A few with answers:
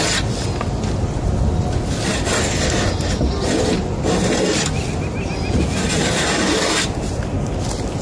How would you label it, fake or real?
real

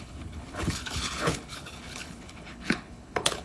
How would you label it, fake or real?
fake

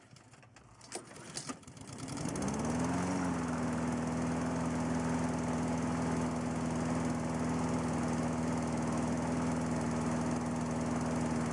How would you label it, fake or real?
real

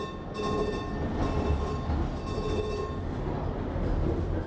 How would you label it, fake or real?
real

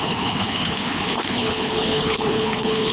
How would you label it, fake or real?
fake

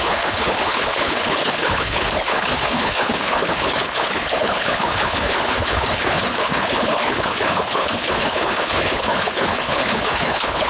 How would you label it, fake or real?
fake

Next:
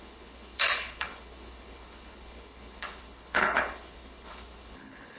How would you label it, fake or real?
fake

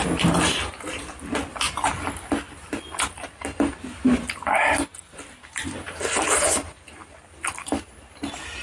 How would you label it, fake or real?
real